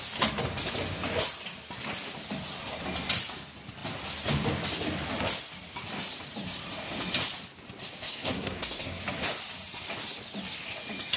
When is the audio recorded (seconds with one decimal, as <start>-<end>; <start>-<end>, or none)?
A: 0.0-8.1; 9.0-11.2